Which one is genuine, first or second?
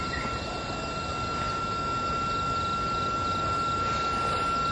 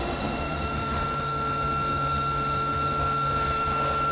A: first